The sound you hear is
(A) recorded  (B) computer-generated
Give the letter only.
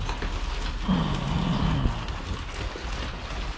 A